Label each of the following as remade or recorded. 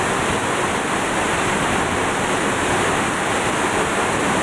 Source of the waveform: recorded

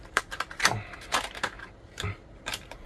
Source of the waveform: remade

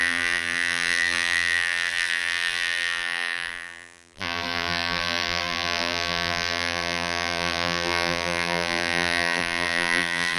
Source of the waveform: remade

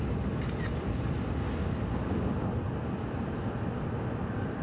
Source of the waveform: recorded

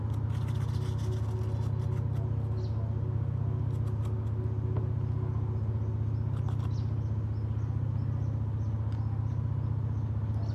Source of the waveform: recorded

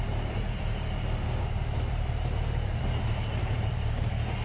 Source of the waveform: remade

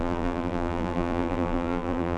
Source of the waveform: remade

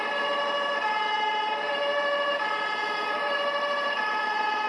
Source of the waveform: remade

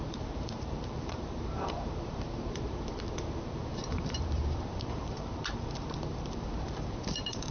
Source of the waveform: remade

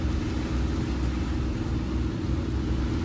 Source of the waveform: recorded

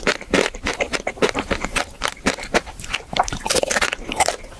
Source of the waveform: remade